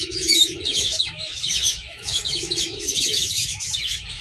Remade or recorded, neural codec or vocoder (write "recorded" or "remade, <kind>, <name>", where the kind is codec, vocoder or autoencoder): remade, autoencoder, DAC-VAE